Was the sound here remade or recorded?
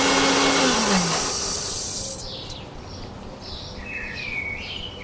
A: recorded